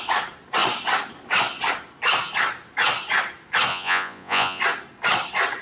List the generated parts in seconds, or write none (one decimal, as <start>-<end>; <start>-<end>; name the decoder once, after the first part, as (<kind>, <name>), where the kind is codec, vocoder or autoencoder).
3.7-4.6 (vocoder, Vocos)